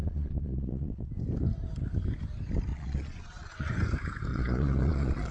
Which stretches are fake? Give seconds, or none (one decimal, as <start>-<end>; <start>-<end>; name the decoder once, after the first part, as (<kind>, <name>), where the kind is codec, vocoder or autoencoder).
0.0-1.1 (vocoder, Vocos); 2.7-3.7; 4.3-5.3